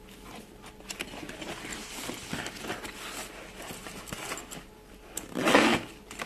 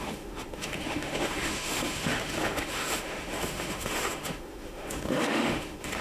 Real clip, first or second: first